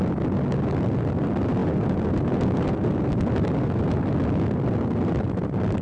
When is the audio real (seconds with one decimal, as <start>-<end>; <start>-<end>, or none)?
0.0-5.8